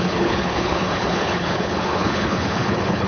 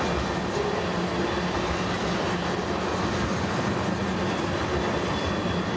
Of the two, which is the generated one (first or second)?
first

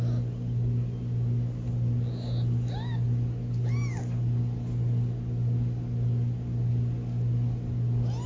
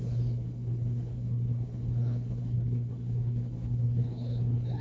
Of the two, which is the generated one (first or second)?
second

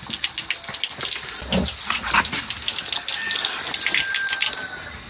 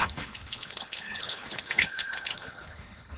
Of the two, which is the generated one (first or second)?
second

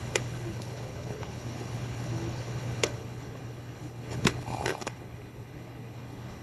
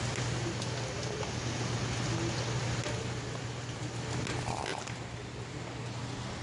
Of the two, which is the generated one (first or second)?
first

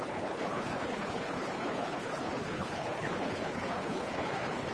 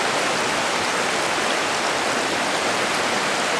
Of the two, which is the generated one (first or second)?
first